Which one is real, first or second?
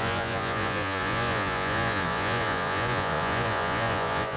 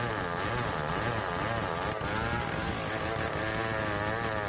second